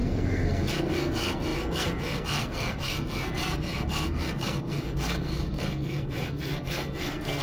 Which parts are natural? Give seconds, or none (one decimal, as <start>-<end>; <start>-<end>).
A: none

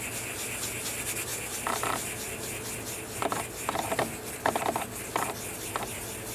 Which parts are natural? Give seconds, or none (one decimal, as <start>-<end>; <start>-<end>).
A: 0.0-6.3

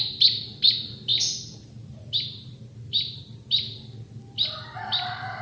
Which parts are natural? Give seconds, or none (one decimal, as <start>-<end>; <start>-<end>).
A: none

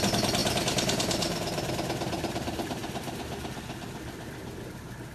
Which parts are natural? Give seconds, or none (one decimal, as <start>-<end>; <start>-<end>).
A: 2.8-4.4

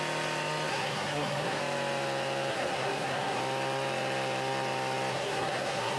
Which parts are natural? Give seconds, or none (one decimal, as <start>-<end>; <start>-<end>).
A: 0.0-0.7; 1.6-2.5; 3.4-5.1